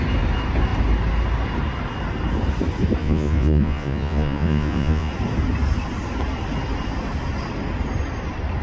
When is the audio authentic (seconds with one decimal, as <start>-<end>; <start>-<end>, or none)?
0.0-3.0; 5.1-8.6